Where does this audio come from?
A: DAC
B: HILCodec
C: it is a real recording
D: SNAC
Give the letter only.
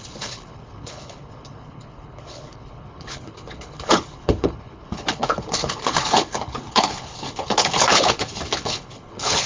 B